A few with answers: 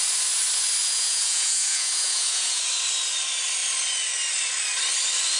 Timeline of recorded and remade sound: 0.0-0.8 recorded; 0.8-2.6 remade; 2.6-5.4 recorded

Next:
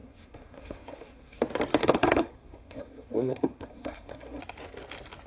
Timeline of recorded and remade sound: 0.0-1.4 remade; 1.4-1.8 recorded; 1.8-4.4 remade; 4.4-5.3 recorded